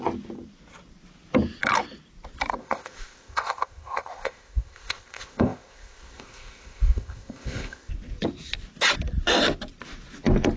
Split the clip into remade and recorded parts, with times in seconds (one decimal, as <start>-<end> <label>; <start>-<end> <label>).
0.0-2.6 recorded; 2.6-7.9 remade; 7.9-10.6 recorded